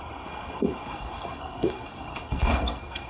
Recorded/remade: remade